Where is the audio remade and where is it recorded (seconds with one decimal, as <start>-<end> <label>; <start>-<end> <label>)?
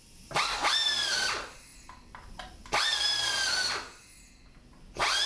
0.0-5.3 recorded